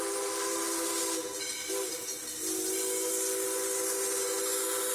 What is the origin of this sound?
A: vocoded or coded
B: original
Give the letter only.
B